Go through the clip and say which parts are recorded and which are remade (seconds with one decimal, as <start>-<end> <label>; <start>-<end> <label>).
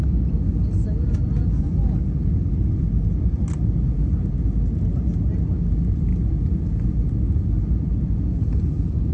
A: 0.0-9.1 recorded